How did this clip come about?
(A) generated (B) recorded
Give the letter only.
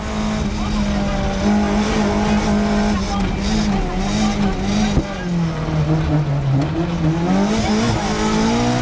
B